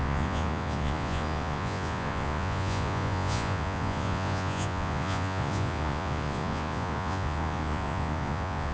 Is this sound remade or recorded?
remade